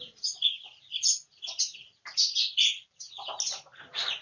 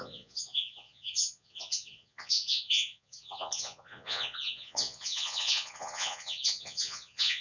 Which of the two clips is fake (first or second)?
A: second